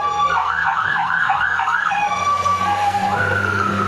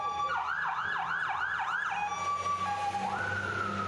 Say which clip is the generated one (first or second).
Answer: first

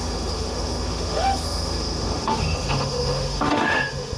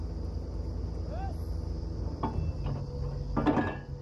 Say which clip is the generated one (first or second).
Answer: first